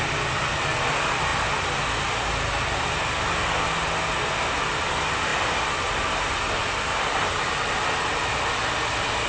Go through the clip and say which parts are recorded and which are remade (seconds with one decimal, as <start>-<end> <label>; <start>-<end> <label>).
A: 0.0-9.3 recorded